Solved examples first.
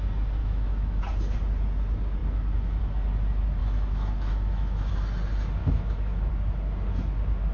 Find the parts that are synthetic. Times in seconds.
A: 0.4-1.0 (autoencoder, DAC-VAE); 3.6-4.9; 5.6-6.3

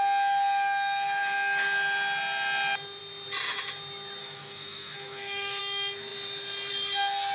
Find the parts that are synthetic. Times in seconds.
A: 4.2-5.6 (autoencoder, DAC-VAE)

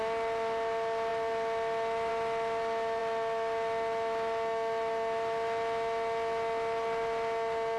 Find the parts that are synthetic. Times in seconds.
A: none